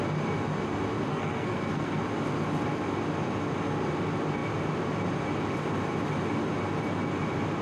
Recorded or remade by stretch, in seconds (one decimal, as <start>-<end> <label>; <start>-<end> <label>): 0.0-1.1 recorded; 1.1-2.0 remade; 2.0-7.6 recorded